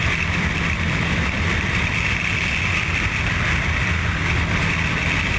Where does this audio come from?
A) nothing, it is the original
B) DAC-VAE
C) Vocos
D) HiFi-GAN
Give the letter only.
A